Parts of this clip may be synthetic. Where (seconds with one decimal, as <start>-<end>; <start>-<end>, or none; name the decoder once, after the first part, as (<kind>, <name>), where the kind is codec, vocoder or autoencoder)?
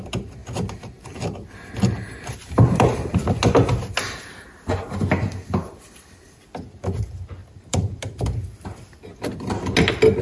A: 7.4-8.0 (vocoder, BigVGAN v2)